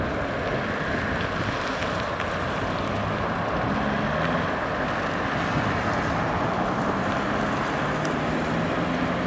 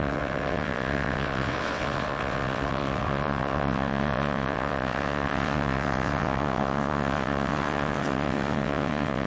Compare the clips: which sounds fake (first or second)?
second